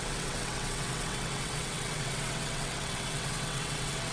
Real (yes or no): no